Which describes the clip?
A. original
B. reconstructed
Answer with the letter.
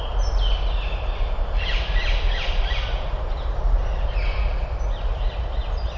A